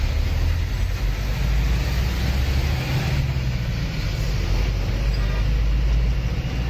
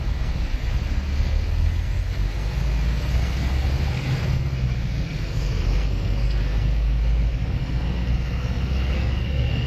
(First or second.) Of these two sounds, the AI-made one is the second